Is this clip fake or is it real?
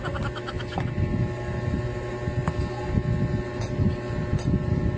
real